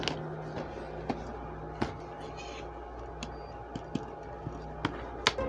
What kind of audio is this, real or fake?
real